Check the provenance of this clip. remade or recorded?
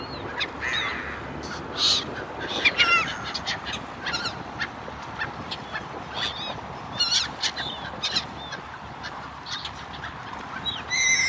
recorded